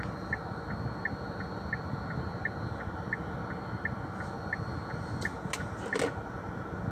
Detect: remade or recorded recorded